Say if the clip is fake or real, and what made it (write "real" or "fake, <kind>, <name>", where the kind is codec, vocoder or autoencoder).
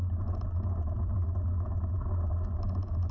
real